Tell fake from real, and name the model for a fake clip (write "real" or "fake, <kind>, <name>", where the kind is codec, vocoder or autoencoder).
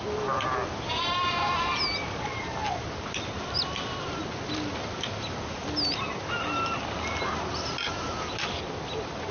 real